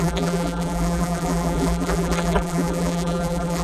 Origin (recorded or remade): remade